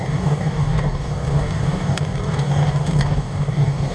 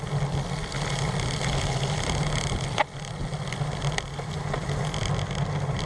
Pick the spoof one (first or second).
first